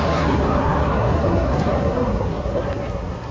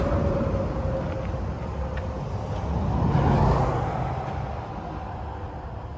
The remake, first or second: first